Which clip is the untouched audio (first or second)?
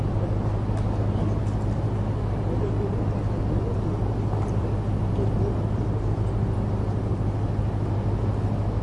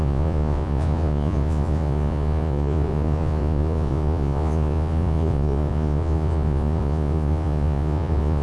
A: first